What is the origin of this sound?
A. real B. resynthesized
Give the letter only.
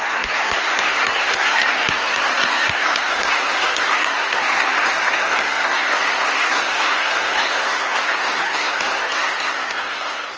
B